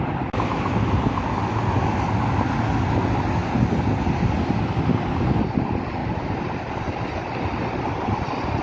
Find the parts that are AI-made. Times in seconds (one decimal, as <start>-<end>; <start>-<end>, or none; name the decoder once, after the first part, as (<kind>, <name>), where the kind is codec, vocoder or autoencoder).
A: 6.0-6.9 (vocoder, BigVGAN v2)